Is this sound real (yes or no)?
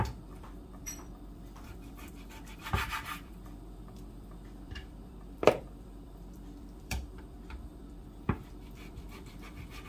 no